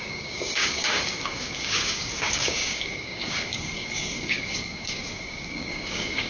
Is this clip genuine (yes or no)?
no